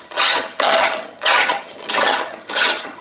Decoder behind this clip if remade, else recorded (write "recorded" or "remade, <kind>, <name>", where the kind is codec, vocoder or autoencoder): remade, vocoder, HiFi-GAN